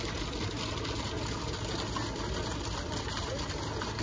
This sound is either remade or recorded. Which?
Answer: recorded